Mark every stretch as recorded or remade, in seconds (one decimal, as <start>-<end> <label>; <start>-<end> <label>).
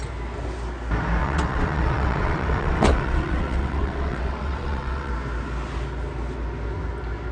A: 0.0-1.2 recorded; 1.2-5.1 remade; 5.1-7.3 recorded